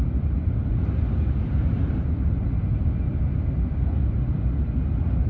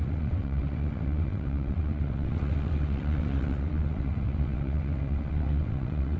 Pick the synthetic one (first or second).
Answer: second